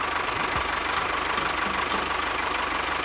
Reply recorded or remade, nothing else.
recorded